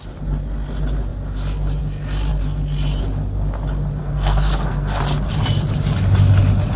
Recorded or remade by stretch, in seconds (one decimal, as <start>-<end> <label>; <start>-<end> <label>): 0.0-4.0 recorded; 4.0-5.0 remade; 5.0-6.8 recorded